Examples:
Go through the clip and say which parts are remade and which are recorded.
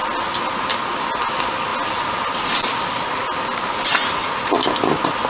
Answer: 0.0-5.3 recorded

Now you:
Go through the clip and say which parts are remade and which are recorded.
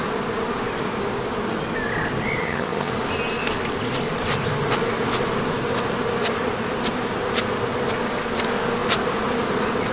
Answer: 0.0-2.4 recorded; 2.4-2.9 remade; 2.9-9.9 recorded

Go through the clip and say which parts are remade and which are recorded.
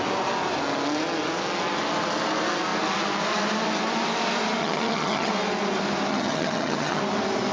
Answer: 0.0-4.6 recorded; 4.6-5.3 remade; 5.3-6.1 recorded; 6.1-7.0 remade; 7.0-7.5 recorded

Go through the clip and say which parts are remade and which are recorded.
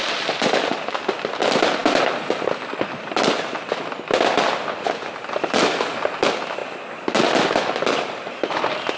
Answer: 0.0-9.0 recorded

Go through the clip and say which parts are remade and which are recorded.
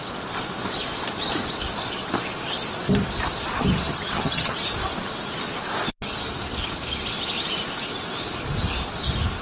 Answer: 0.0-3.9 recorded; 3.9-4.5 remade; 4.5-9.4 recorded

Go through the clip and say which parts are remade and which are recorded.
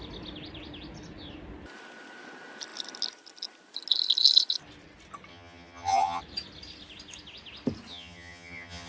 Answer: 0.0-5.3 recorded; 5.3-6.2 remade; 6.2-7.9 recorded; 7.9-8.9 remade